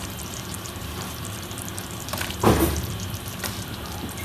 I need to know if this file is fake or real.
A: fake